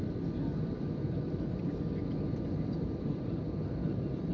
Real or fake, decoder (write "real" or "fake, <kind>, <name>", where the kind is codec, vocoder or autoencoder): real